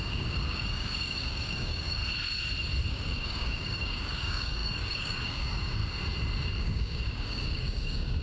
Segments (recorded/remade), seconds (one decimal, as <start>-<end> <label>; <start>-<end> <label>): 0.0-2.0 remade; 2.0-2.9 recorded; 2.9-5.8 remade; 5.8-6.5 recorded; 6.5-8.2 remade